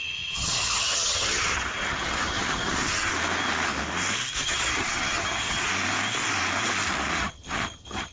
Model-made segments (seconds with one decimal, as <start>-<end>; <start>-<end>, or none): 0.0-3.1; 4.4-5.7; 7.2-8.1